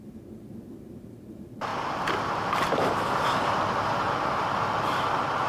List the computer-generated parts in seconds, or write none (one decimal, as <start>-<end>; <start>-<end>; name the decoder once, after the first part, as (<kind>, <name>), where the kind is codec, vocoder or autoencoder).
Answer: none